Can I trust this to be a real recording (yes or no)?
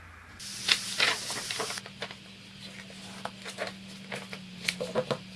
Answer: yes